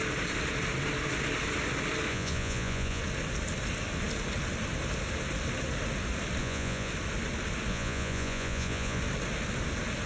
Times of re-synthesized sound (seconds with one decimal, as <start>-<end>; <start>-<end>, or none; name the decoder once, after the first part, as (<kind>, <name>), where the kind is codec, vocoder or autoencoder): 2.1-3.0 (vocoder, Vocos); 6.4-6.9; 7.7-9.0